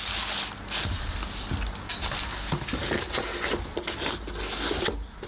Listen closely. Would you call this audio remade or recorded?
recorded